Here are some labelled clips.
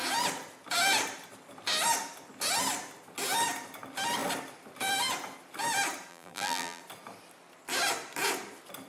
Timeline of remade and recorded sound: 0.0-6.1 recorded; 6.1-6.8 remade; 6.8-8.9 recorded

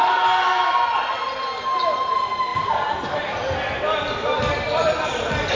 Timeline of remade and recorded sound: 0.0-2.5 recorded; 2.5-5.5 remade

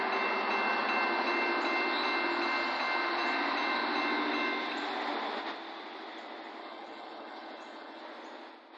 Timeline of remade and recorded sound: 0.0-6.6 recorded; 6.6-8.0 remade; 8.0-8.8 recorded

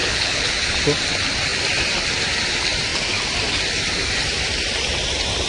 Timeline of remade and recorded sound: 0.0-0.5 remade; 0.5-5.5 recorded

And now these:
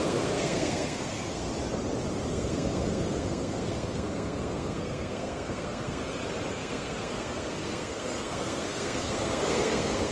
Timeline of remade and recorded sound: 0.0-1.5 remade; 1.5-2.3 recorded; 2.3-6.0 remade; 6.0-6.5 recorded; 6.5-10.1 remade

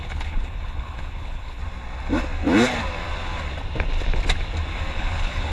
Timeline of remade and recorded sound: 0.0-1.6 remade; 1.6-4.9 recorded; 4.9-5.5 remade

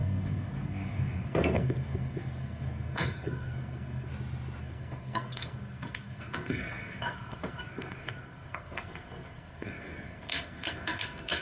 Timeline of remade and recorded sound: 0.0-4.1 remade; 4.1-4.6 recorded; 4.6-11.4 remade